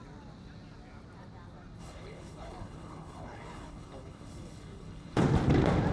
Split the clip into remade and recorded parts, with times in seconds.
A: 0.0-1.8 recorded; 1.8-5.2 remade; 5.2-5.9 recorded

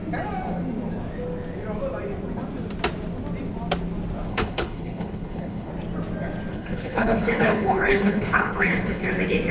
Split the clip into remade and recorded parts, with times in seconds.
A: 0.0-4.3 recorded; 4.3-5.7 remade; 5.7-6.5 recorded; 6.5-9.1 remade; 9.1-9.5 recorded